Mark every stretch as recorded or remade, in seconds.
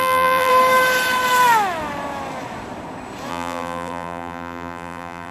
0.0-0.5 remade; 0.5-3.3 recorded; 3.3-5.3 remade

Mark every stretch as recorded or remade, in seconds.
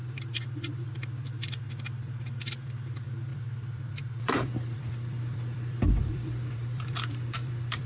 0.0-3.3 recorded; 3.3-7.9 remade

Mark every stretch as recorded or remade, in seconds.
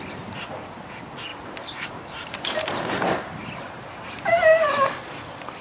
0.0-1.3 recorded; 1.3-4.7 remade; 4.7-5.6 recorded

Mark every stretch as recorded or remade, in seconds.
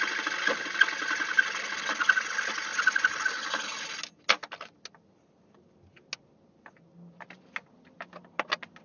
0.0-8.8 recorded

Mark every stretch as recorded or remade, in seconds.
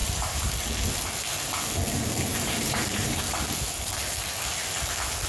0.0-0.5 remade; 0.5-2.3 recorded; 2.3-3.2 remade; 3.2-5.3 recorded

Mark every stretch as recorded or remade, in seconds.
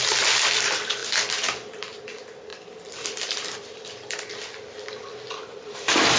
0.0-2.5 recorded; 2.5-5.1 remade; 5.1-6.2 recorded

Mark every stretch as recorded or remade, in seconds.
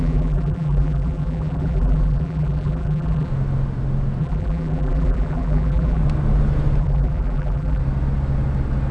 0.0-3.3 remade; 3.3-4.2 recorded; 4.2-6.0 remade; 6.0-6.8 recorded; 6.8-7.8 remade; 7.8-8.9 recorded